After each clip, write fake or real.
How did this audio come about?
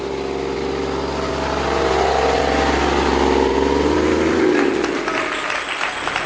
real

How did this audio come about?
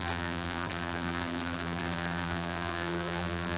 fake